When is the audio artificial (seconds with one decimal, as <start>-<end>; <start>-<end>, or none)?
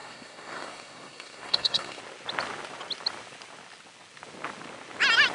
0.0-2.0